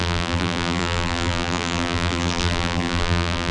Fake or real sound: fake